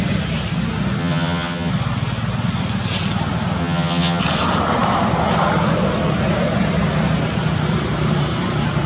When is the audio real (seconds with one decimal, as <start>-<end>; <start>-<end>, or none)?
0.0-1.0; 1.7-3.6; 4.2-8.9